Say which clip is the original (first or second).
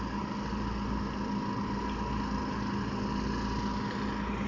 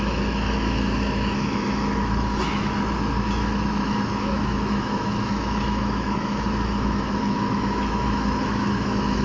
first